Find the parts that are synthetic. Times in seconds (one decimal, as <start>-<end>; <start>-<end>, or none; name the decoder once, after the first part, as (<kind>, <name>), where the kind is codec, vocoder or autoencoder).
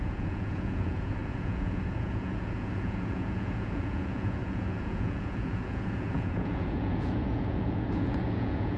0.0-8.8 (vocoder, Vocos)